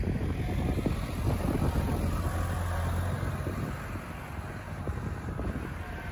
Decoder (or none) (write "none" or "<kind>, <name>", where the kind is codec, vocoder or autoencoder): none